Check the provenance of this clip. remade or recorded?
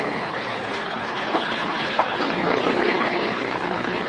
remade